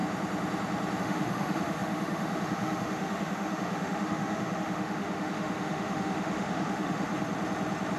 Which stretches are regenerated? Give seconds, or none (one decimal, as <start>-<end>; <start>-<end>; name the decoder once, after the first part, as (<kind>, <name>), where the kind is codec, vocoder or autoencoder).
1.0-7.1 (autoencoder, DAC-VAE)